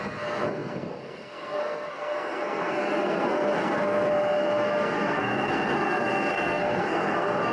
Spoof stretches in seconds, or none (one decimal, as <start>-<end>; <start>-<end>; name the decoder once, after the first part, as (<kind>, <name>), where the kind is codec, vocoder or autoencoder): 0.0-7.5 (codec, SNAC)